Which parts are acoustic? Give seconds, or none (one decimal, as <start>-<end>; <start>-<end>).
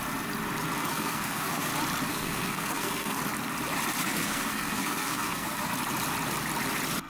0.0-0.8; 1.7-2.1; 3.2-4.0; 5.7-7.1